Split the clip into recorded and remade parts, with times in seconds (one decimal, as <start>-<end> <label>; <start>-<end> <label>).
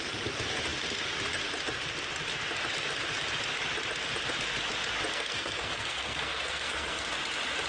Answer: 0.0-5.1 recorded; 5.1-7.1 remade; 7.1-7.7 recorded